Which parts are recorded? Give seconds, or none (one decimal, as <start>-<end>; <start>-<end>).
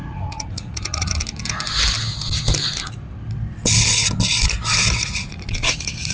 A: 1.2-4.9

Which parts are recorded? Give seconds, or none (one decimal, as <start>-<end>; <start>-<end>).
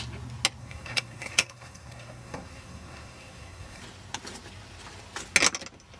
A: 0.0-0.6; 3.8-6.0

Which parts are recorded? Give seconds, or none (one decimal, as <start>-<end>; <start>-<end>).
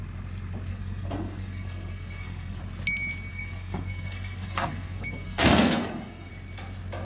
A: 0.0-0.7; 2.6-3.3; 6.3-7.0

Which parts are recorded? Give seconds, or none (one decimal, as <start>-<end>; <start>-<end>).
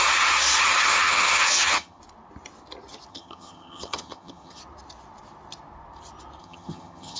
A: 0.0-0.9; 2.0-3.1; 4.6-6.4